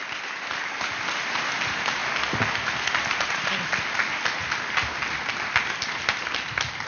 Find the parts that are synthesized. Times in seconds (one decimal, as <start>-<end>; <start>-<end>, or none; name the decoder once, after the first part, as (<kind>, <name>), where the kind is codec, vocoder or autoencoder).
none